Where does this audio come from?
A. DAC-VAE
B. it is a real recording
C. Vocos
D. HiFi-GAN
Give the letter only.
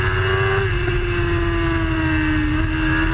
B